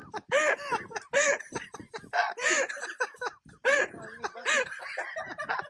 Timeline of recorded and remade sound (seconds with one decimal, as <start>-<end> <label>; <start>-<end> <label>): 0.0-5.7 recorded